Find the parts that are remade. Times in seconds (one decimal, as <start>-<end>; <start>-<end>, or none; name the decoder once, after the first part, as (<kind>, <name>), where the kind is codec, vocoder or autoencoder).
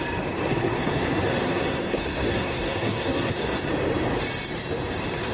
0.5-3.7 (codec, SNAC)